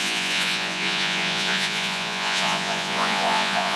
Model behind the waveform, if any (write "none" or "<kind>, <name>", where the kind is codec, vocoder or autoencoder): vocoder, Vocos